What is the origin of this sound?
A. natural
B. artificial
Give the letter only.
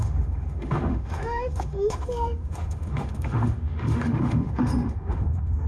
B